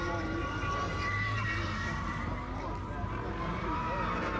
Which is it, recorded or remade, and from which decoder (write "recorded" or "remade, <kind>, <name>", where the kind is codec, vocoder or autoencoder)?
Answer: recorded